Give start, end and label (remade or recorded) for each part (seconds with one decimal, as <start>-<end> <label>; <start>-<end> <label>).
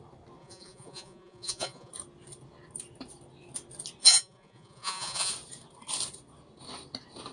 0.0-0.4 recorded; 0.4-1.9 remade; 1.9-4.0 recorded; 4.0-5.3 remade; 5.3-7.3 recorded